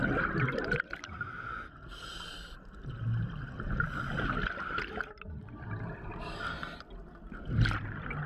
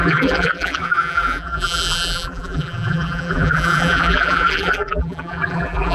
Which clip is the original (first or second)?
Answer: first